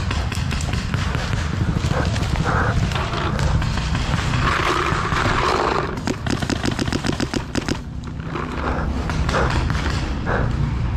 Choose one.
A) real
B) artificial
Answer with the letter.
B